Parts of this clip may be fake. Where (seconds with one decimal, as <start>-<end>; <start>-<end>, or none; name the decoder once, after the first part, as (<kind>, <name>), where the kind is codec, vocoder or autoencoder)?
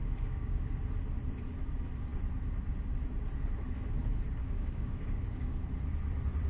0.0-0.7 (codec, DAC); 4.4-5.6